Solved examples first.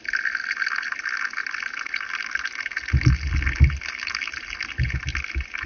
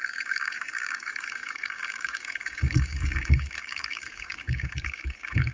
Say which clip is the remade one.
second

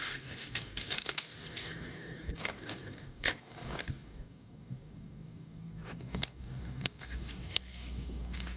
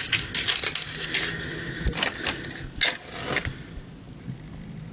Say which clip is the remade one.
first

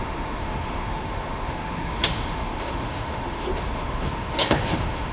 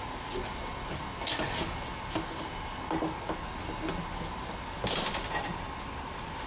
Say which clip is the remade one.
first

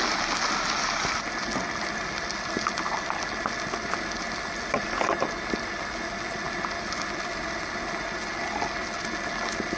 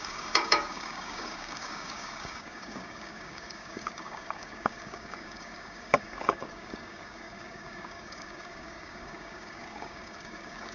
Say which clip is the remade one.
second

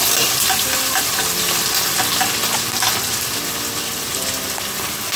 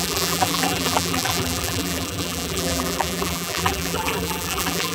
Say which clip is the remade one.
second